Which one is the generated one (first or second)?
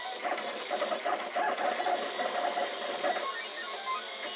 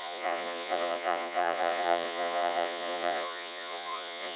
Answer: second